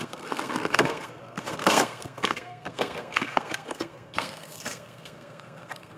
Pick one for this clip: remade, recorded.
remade